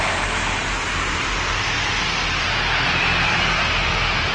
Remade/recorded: recorded